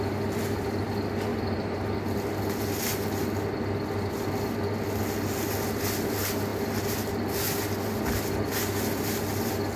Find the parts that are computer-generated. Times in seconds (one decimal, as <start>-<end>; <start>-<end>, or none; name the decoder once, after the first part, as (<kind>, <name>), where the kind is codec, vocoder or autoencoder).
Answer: 1.3-1.8 (vocoder, BigVGAN v2)

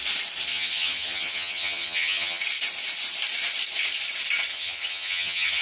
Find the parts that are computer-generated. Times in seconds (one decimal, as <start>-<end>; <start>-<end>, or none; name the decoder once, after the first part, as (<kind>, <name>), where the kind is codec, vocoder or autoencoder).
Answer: 0.5-2.4 (vocoder, HiFi-GAN); 4.5-5.6

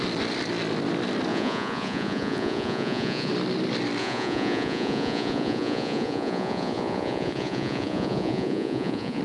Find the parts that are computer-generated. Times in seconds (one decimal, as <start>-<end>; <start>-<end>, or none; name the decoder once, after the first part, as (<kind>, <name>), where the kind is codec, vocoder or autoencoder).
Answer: 1.3-3.3 (vocoder, Vocos); 4.0-9.2

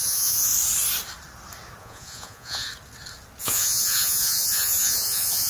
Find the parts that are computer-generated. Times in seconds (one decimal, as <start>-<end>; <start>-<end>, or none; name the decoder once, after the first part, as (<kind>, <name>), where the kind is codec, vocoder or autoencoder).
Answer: 0.0-0.5 (vocoder, Vocos); 1.8-2.7; 3.4-5.5